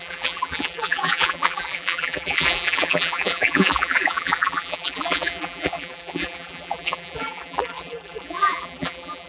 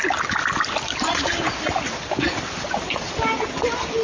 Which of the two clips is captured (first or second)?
second